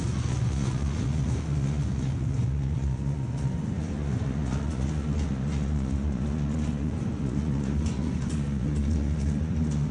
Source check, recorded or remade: remade